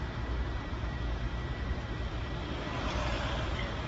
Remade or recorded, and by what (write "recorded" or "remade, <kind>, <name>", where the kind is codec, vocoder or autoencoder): remade, vocoder, BigVGAN v2